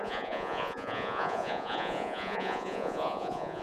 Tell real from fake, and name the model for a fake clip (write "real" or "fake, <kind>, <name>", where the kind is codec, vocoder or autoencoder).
fake, vocoder, Vocos